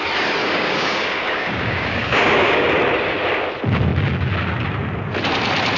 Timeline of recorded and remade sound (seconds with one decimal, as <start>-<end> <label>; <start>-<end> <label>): 0.0-0.4 recorded; 0.4-2.7 remade; 2.7-5.8 recorded